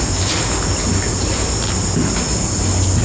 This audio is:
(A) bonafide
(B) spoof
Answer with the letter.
A